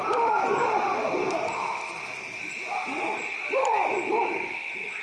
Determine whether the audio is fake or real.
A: real